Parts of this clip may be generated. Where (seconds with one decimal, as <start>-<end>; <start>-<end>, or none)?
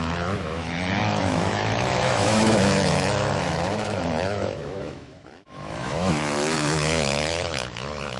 0.0-8.2